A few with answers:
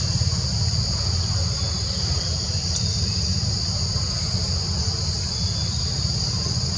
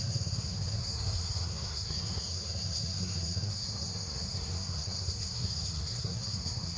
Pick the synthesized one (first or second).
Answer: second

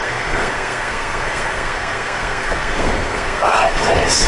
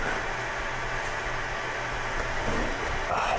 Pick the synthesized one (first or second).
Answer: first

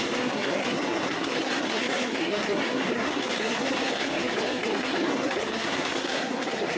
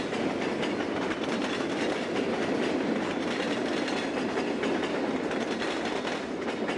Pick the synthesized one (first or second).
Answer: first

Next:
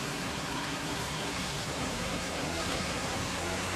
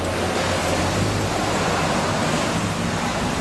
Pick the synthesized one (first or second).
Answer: first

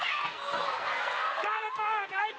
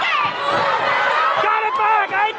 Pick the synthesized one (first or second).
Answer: first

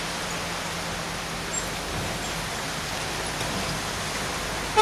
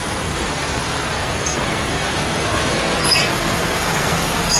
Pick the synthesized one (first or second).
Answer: second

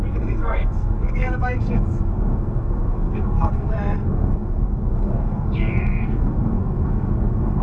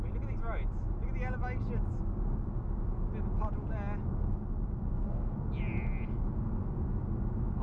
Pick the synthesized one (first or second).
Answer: first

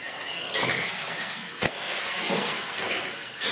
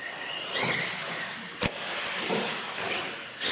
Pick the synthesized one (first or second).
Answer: first